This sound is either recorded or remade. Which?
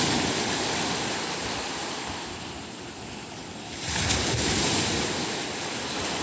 recorded